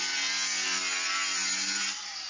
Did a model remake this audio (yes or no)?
no